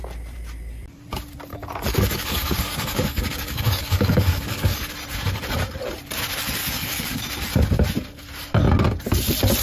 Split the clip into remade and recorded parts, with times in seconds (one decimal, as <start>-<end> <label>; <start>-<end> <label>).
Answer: 0.0-1.5 recorded; 1.5-4.9 remade; 4.9-6.6 recorded; 6.6-7.2 remade; 7.2-9.6 recorded